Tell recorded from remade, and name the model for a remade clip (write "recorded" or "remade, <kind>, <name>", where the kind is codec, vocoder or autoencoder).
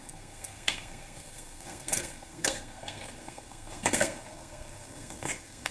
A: remade, codec, SNAC